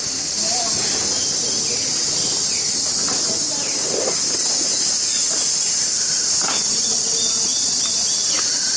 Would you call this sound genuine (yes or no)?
yes